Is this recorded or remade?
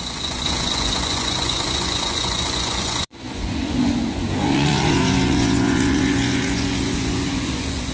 remade